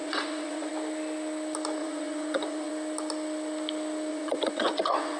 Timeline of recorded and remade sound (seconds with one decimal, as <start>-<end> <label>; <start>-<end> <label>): 0.0-0.7 remade; 0.7-1.8 recorded; 1.8-2.7 remade; 2.7-4.1 recorded; 4.1-5.2 remade